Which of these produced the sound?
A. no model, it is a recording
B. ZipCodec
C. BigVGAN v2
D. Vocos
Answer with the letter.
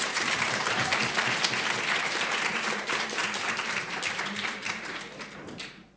C